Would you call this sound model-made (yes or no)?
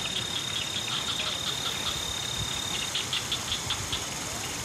no